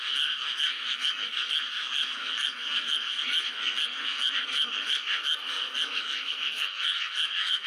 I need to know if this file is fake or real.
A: fake